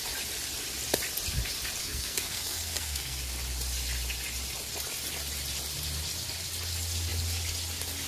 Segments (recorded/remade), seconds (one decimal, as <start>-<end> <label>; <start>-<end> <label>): 0.0-1.8 recorded; 1.8-3.2 remade; 3.2-8.1 recorded

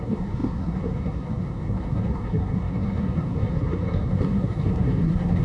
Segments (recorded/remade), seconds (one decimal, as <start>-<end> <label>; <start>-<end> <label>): 0.0-5.4 remade

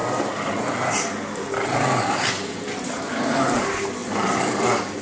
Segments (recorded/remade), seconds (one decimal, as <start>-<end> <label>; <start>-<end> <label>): 0.0-5.0 recorded

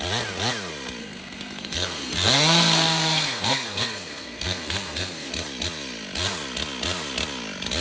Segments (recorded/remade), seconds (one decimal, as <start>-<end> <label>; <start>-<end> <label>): 0.0-1.0 recorded; 1.0-5.3 remade; 5.3-7.8 recorded

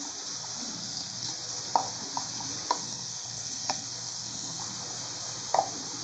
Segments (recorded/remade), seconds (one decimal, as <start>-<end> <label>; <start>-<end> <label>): 0.0-0.8 recorded; 0.8-1.3 remade; 1.3-2.8 recorded; 2.8-4.6 remade; 4.6-6.0 recorded

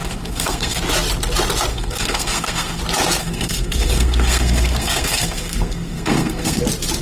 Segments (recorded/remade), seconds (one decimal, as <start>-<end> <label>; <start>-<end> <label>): 0.0-0.8 remade; 0.8-1.7 recorded; 1.7-2.8 remade; 2.8-3.2 recorded; 3.2-6.6 remade; 6.6-7.0 recorded

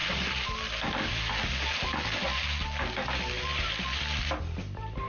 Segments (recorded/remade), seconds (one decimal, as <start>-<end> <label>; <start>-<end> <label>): 0.0-5.1 recorded